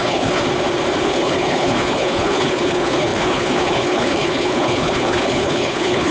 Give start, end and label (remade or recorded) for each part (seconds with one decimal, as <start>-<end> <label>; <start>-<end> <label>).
0.0-0.4 remade; 0.4-1.0 recorded; 1.0-6.1 remade